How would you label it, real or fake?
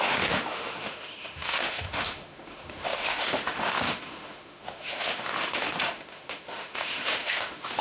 fake